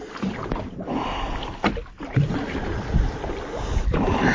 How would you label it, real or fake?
fake